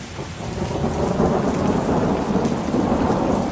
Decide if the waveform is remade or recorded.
recorded